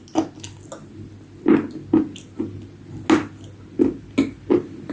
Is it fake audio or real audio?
real